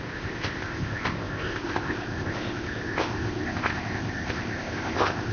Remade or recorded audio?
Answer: remade